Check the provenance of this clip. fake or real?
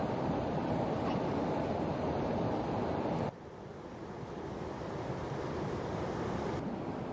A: real